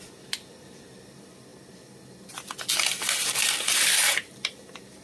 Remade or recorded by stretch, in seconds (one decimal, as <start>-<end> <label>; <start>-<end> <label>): 0.0-5.0 recorded